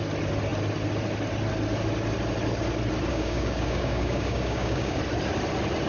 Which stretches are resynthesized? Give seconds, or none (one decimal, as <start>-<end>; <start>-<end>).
3.1-5.0